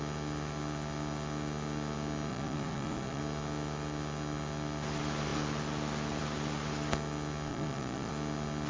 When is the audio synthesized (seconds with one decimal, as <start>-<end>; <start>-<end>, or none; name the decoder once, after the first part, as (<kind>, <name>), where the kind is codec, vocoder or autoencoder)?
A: 2.3-3.2 (vocoder, Vocos); 7.5-8.1